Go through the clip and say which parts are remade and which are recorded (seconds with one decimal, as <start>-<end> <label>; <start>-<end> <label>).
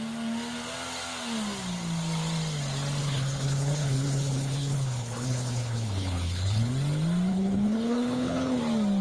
0.0-3.0 recorded; 3.0-6.7 remade; 6.7-7.3 recorded; 7.3-8.6 remade; 8.6-9.0 recorded